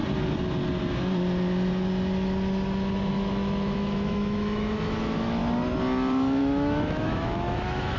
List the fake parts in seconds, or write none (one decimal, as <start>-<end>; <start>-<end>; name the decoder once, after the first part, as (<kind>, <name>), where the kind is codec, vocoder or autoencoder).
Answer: 3.1-5.4 (autoencoder, DAC-VAE); 6.4-8.0